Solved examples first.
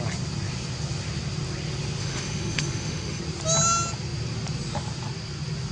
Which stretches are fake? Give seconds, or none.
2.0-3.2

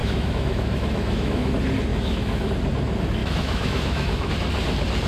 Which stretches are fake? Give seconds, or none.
0.0-1.5; 1.9-2.5; 3.2-4.3

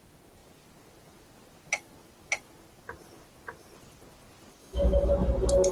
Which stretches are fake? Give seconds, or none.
4.6-5.1

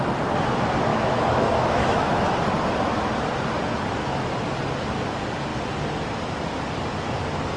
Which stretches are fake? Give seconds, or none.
0.9-2.3

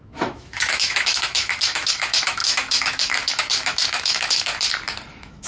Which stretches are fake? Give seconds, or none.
0.0-4.5; 5.1-5.5

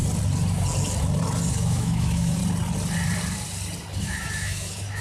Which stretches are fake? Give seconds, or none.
1.5-2.4; 4.0-5.0

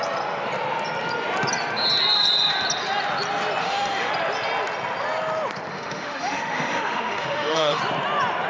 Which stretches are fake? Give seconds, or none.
3.6-4.1; 5.7-7.8

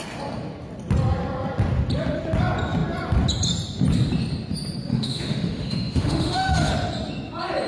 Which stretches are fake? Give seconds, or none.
4.9-6.7